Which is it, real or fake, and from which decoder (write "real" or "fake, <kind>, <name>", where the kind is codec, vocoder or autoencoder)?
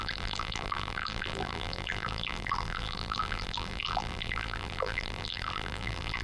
fake, vocoder, BigVGAN v2